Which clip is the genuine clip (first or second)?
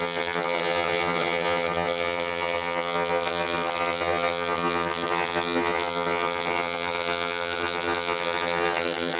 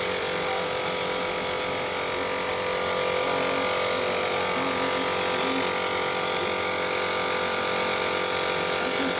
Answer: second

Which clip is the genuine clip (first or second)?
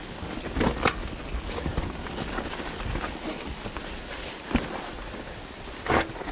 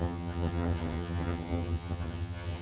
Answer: first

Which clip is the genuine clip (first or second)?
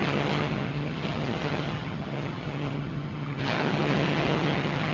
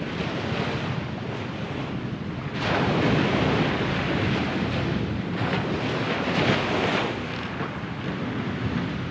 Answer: second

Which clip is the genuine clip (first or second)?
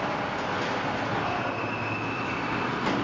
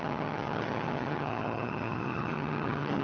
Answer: first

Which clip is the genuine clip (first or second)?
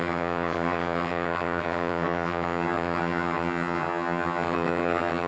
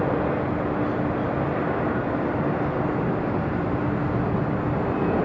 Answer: second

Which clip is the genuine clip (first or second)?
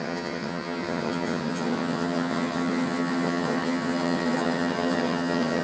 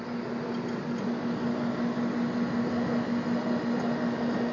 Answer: second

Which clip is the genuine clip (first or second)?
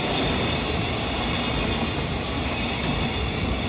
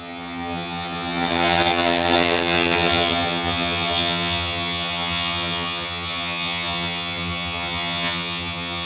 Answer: first